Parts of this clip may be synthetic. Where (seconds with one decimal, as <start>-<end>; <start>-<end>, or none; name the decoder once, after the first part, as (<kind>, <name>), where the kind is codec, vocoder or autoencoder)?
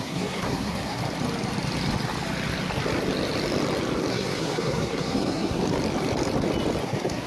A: 0.0-1.0 (codec, SNAC); 4.1-5.6; 6.8-7.3